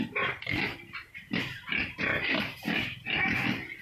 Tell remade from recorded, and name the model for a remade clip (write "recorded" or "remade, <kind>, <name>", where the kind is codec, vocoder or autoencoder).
remade, vocoder, BigVGAN v2